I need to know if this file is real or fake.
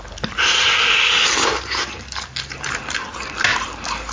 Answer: real